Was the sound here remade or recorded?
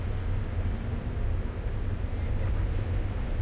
recorded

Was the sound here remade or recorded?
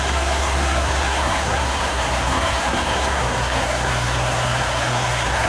remade